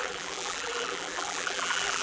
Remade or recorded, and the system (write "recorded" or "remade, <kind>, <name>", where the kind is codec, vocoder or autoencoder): remade, vocoder, BigVGAN v2